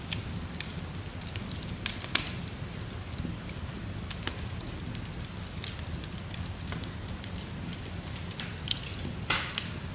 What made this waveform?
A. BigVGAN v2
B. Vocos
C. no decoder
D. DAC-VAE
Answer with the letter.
C